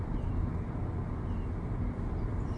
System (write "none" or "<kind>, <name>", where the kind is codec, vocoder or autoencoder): none